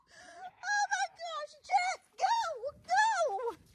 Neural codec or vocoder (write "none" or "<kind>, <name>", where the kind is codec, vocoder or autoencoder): vocoder, BigVGAN v2